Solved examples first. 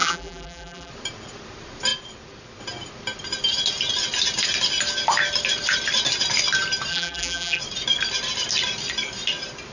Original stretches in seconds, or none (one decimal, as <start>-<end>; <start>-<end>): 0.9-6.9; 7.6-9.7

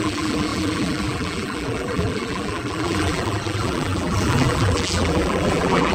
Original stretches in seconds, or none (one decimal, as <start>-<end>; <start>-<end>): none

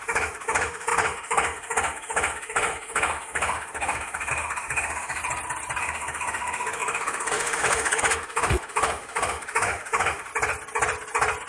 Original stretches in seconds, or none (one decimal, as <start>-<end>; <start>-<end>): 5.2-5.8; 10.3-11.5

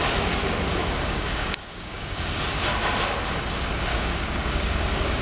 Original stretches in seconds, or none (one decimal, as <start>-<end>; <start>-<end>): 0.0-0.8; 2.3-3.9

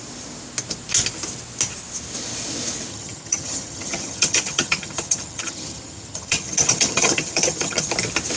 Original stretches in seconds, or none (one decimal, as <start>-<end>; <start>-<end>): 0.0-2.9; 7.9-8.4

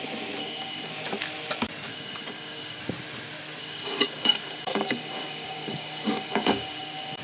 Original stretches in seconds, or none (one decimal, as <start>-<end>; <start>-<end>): 0.0-0.4; 0.9-1.9; 2.8-3.6